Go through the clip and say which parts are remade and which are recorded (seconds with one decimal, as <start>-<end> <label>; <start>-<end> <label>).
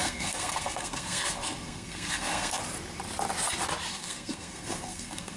0.0-2.6 remade; 2.6-3.9 recorded; 3.9-5.4 remade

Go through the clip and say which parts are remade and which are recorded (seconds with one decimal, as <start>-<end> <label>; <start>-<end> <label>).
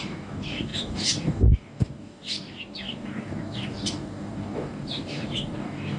0.0-6.0 remade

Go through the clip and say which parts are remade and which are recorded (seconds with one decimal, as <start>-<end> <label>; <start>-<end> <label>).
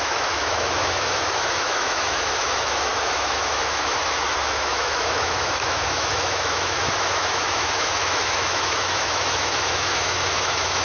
0.0-10.8 remade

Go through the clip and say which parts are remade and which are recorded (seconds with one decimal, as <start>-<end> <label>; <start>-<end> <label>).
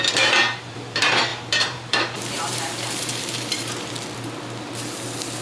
0.0-1.3 recorded; 1.3-3.9 remade; 3.9-5.4 recorded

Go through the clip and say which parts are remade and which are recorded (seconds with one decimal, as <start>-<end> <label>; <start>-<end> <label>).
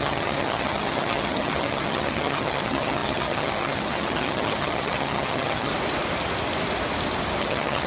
0.0-5.7 remade; 5.7-7.4 recorded; 7.4-7.9 remade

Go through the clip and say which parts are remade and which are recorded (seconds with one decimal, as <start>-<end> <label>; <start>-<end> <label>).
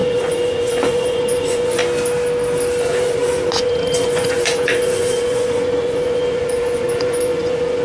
0.0-1.8 remade; 1.8-2.8 recorded; 2.8-7.8 remade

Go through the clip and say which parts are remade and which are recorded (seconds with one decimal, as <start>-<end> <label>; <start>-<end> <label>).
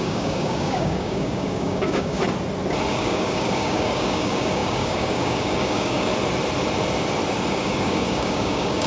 0.0-2.2 remade; 2.2-2.9 recorded; 2.9-6.1 remade; 6.1-7.5 recorded; 7.5-8.9 remade